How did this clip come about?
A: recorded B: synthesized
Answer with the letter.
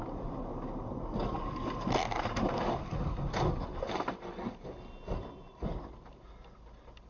A